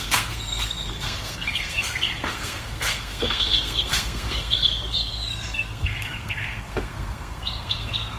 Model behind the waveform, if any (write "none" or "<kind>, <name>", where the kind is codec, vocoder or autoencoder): codec, SNAC